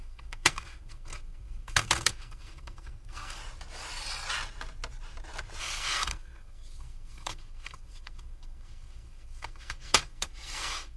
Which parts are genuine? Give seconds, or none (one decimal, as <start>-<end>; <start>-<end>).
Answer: 3.4-5.6